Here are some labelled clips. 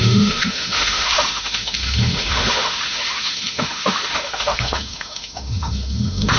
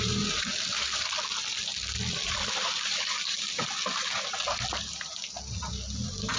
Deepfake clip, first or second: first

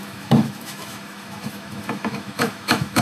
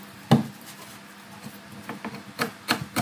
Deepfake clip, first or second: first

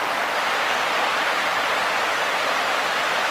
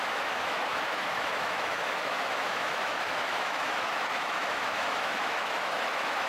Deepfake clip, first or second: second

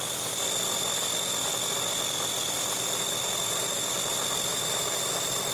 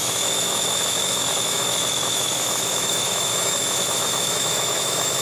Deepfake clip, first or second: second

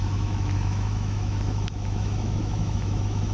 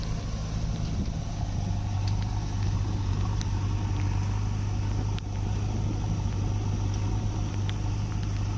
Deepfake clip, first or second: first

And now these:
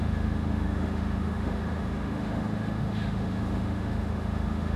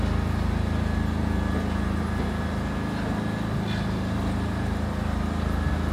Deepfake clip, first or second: first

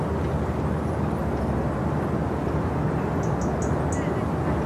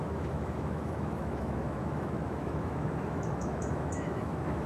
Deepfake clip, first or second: second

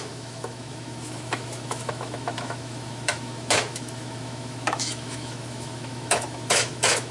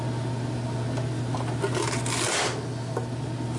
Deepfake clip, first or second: first